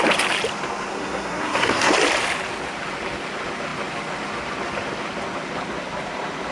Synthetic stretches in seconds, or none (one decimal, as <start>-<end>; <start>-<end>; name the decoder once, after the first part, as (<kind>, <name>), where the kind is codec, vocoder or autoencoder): 0.9-1.9 (codec, SNAC)

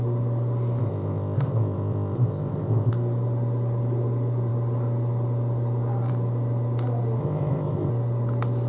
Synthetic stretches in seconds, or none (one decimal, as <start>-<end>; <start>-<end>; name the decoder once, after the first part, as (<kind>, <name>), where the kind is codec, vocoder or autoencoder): 0.8-2.9 (codec, ZipCodec); 7.2-7.9

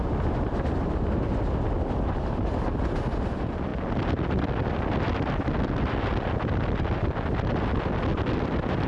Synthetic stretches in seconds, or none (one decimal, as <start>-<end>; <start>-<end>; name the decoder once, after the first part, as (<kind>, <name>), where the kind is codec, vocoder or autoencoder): none

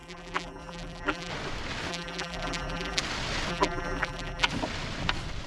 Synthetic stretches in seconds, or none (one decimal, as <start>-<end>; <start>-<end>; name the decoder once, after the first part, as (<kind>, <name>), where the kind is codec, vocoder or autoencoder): 0.0-1.3 (vocoder, BigVGAN v2); 1.9-3.0; 3.5-4.5

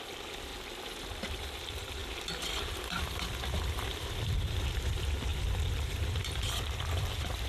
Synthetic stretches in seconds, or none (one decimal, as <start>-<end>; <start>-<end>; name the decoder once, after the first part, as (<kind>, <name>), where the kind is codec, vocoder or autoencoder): 0.0-0.5 (vocoder, BigVGAN v2); 1.1-7.5

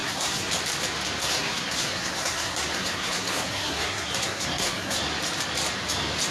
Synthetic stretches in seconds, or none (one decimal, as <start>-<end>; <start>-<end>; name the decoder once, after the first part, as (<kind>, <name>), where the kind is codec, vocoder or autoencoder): 0.0-0.5 (codec, SNAC); 1.2-5.0

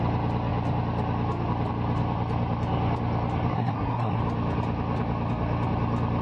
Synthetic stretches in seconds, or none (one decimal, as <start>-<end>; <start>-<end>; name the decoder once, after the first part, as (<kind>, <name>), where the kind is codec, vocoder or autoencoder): 3.5-4.2 (codec, SNAC)

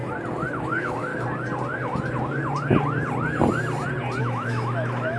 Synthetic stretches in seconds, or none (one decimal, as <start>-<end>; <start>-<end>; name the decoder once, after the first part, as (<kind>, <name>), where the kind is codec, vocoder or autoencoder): 0.5-1.1 (autoencoder, DAC-VAE); 4.2-5.2